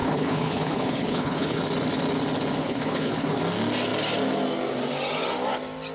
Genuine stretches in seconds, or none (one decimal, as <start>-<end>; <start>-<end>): 1.6-2.6; 3.4-5.9